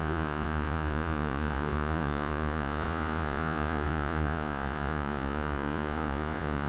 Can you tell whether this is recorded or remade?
remade